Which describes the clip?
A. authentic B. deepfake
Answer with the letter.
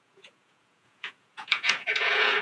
B